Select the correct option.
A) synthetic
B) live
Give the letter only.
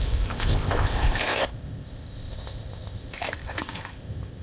A